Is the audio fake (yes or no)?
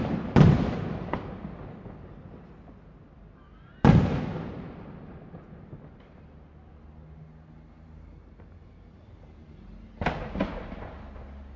no